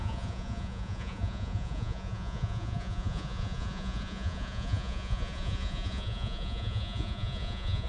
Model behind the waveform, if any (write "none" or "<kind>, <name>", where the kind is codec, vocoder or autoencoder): vocoder, Vocos